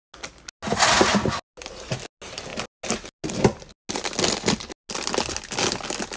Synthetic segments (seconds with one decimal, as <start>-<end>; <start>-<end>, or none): none